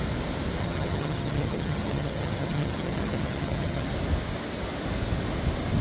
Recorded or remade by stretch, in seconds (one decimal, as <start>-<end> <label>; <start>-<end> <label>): 0.0-0.6 recorded; 0.6-3.9 remade; 3.9-5.8 recorded